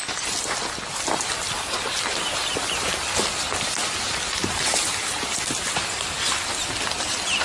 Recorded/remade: recorded